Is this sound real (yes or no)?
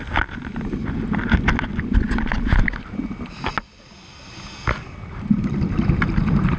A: yes